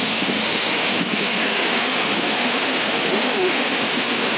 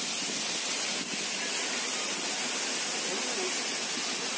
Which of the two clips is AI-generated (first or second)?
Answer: first